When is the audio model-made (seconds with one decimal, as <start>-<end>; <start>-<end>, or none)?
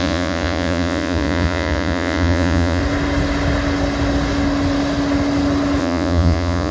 0.0-2.8; 5.8-6.7